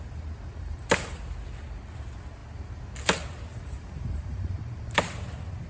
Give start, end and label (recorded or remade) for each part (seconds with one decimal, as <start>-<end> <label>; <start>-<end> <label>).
0.0-0.5 recorded; 0.5-1.2 remade; 1.2-3.5 recorded; 3.5-5.0 remade; 5.0-5.7 recorded